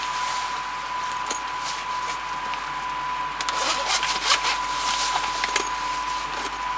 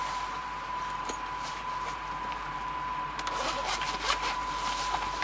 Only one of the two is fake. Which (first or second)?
second